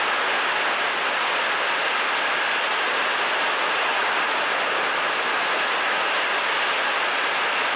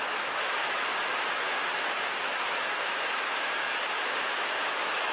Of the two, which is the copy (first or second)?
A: second